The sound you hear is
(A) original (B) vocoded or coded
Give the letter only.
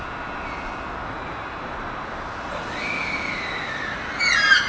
A